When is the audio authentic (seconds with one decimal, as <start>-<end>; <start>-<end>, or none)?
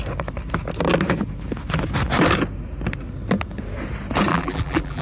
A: 0.0-4.3